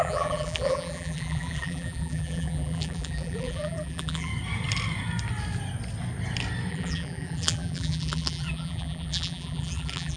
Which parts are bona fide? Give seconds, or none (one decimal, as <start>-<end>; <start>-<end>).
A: 4.3-6.7